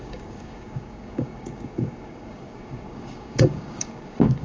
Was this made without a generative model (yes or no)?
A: no